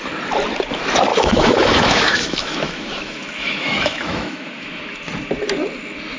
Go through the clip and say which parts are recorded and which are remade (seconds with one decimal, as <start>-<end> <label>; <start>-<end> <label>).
0.0-1.1 recorded; 1.1-4.8 remade; 4.8-6.2 recorded